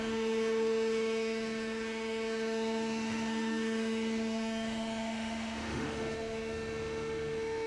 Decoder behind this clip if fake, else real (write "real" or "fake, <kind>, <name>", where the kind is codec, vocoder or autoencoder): fake, autoencoder, DAC-VAE